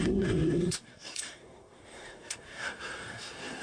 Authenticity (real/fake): fake